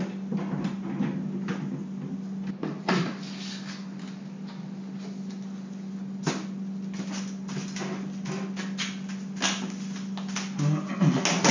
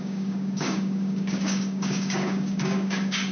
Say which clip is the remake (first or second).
second